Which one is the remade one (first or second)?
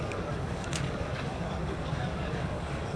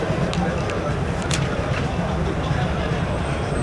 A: first